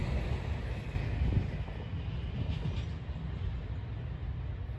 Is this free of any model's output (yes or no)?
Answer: yes